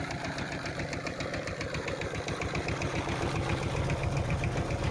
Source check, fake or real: real